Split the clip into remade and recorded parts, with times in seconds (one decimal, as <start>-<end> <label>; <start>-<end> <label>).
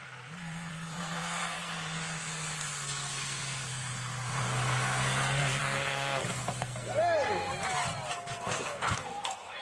0.0-7.5 remade; 7.5-8.1 recorded; 8.1-9.6 remade